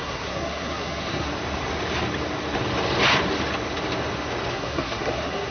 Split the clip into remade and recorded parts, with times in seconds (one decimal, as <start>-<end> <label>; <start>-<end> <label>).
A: 0.0-1.3 remade; 1.3-4.5 recorded; 4.5-5.5 remade